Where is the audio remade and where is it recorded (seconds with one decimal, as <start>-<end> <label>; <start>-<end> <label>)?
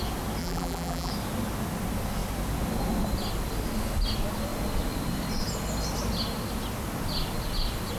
0.0-0.4 recorded; 0.4-1.1 remade; 1.1-8.0 recorded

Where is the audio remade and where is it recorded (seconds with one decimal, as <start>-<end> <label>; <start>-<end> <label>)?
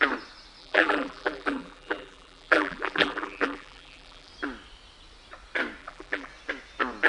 0.0-0.6 recorded; 0.6-4.3 remade; 4.3-5.8 recorded; 5.8-6.3 remade; 6.3-7.1 recorded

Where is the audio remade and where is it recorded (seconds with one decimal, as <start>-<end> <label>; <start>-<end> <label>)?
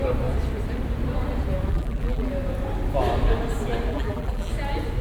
0.0-1.7 recorded; 1.7-2.3 remade; 2.3-3.9 recorded; 3.9-4.5 remade; 4.5-5.0 recorded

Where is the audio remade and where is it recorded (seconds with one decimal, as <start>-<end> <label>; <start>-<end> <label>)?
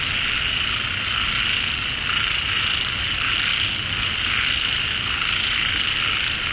0.0-6.5 recorded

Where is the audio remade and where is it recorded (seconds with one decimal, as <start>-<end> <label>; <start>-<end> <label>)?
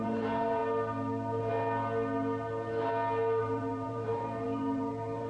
0.0-0.6 remade; 0.6-3.4 recorded; 3.4-5.3 remade